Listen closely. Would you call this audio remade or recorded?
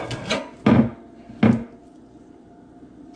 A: recorded